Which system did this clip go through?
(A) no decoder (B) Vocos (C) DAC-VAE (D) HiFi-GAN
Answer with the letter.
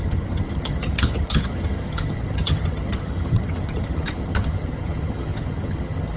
D